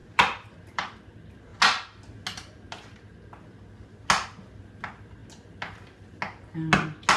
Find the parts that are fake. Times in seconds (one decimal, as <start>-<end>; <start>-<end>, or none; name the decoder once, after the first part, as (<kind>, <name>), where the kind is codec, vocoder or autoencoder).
0.0-1.0 (vocoder, BigVGAN v2)